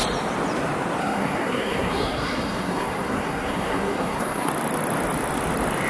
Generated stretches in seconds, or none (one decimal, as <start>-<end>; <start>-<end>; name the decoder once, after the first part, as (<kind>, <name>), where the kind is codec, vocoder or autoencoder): 1.0-4.5 (codec, SNAC)